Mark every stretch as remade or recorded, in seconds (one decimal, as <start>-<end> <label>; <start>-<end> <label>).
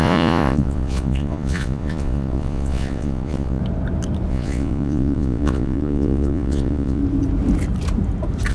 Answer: 0.0-3.6 remade; 3.6-4.3 recorded; 4.3-7.0 remade; 7.0-8.5 recorded